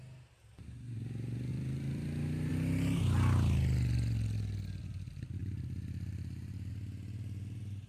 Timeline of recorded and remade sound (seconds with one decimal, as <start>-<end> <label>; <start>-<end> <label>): 0.0-1.5 recorded; 1.5-2.5 remade; 2.5-5.4 recorded; 5.4-6.7 remade; 6.7-7.9 recorded